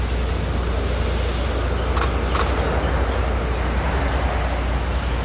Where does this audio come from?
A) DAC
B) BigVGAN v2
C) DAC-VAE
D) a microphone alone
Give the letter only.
D